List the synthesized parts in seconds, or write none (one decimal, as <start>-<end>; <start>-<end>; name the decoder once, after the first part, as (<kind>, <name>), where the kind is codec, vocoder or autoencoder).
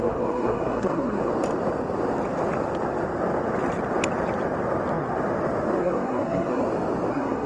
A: 0.0-1.3 (codec, SNAC); 5.8-6.6; 7.1-7.5